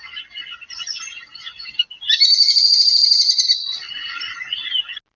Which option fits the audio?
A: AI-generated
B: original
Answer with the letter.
B